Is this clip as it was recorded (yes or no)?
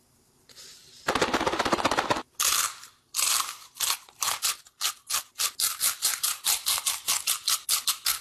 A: yes